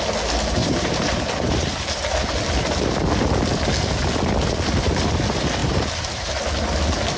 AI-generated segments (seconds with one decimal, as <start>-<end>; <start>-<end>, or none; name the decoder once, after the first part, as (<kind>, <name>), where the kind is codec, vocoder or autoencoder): 0.6-2.1 (vocoder, BigVGAN v2); 5.6-6.4